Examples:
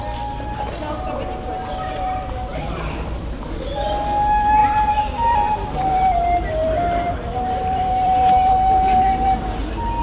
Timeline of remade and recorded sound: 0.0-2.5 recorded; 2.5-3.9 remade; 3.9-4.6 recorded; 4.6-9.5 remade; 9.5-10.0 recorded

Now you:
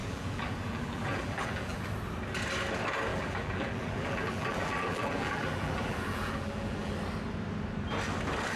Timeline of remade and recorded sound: 0.0-1.8 remade; 1.8-3.1 recorded; 3.1-6.9 remade; 6.9-8.6 recorded